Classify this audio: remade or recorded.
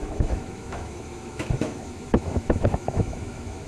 remade